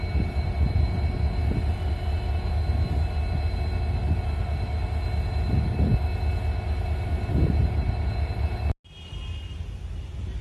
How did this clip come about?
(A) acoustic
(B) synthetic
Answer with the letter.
A